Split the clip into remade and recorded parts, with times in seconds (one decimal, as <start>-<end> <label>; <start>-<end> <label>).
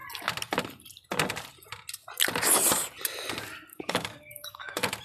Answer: 0.0-3.7 recorded; 3.7-5.0 remade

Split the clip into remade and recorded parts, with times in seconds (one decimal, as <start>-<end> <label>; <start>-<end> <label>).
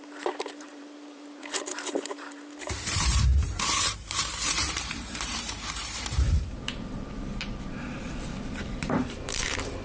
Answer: 0.0-9.8 remade